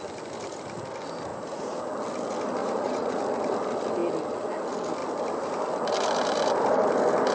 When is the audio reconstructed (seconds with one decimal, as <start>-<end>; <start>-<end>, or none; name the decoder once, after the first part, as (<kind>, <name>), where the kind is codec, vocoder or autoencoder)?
1.3-1.8 (vocoder, Vocos); 2.6-3.2